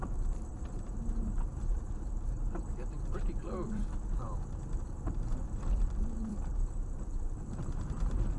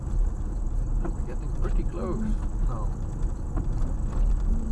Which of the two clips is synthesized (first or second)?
first